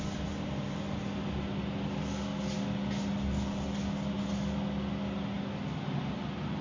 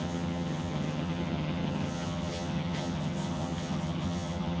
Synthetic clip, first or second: second